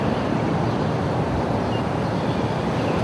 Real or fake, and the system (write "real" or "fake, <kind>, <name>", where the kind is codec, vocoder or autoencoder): real